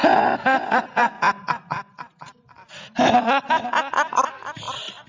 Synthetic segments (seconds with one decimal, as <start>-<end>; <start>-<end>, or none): none